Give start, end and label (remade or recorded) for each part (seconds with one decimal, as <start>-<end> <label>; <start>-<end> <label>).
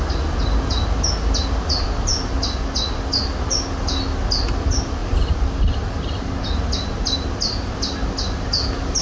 0.0-9.0 recorded